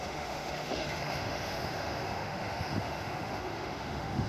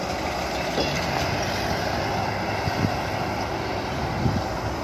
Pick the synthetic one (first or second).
first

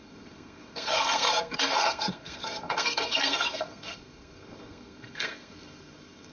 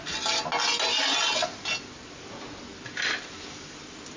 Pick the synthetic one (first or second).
first